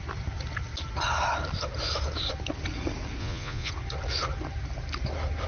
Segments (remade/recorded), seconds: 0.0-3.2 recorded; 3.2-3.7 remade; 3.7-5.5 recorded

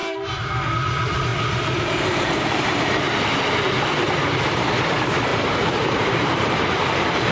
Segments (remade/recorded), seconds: 0.0-1.3 recorded; 1.3-3.0 remade; 3.0-5.3 recorded; 5.3-7.3 remade

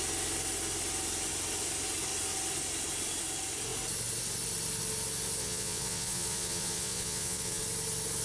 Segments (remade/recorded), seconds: 0.0-5.4 recorded; 5.4-7.6 remade; 7.6-8.2 recorded

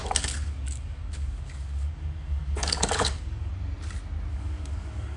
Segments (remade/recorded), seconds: 0.0-3.5 remade; 3.5-4.3 recorded; 4.3-5.2 remade

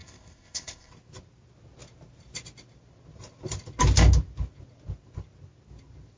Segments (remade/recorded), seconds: 0.0-0.9 remade; 0.9-6.2 recorded

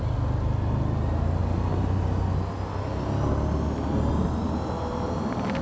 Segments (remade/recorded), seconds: 0.0-5.6 recorded